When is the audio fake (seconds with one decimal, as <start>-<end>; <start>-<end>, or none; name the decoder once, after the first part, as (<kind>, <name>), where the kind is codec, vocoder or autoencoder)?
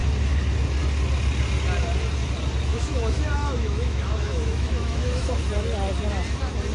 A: 2.7-5.3 (autoencoder, DAC-VAE)